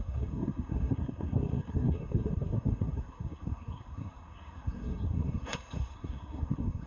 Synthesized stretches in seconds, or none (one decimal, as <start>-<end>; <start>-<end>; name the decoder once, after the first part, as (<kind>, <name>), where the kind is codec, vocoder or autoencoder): 0.0-6.9 (codec, SNAC)